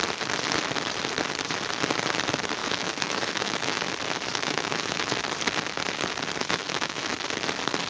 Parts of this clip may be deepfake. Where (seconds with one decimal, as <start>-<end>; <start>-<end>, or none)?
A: 2.6-3.8; 4.3-5.1; 6.4-7.1